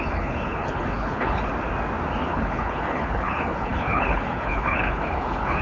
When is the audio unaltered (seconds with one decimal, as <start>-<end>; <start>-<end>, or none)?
1.5-2.2